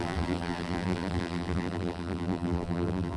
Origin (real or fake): fake